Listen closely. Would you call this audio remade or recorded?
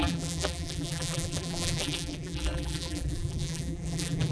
remade